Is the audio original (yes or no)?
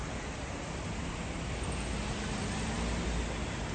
yes